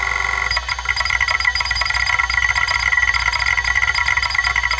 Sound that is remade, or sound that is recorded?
recorded